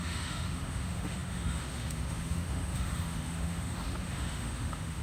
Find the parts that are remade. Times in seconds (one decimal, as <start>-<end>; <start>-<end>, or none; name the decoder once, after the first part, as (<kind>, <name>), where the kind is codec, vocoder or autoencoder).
0.0-5.0 (autoencoder, DAC-VAE)